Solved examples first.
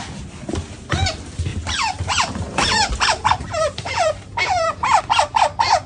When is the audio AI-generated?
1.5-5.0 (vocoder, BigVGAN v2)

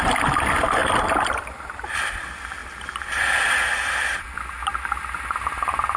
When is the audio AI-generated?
0.8-2.2 (vocoder, BigVGAN v2)

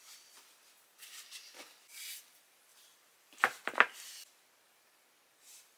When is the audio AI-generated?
2.7-3.9 (vocoder, BigVGAN v2)

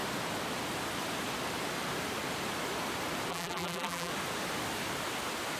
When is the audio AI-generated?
3.3-4.1 (vocoder, BigVGAN v2)

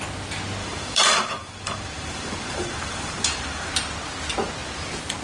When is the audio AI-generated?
0.6-3.7 (vocoder, BigVGAN v2)

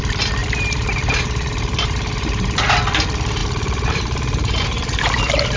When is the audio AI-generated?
0.4-2.6 (vocoder, BigVGAN v2); 3.4-5.0

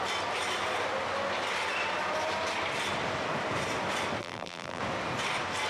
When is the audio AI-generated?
4.2-4.8 (vocoder, BigVGAN v2)

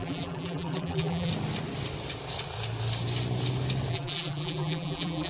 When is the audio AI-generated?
0.0-1.3 (vocoder, BigVGAN v2); 3.9-5.3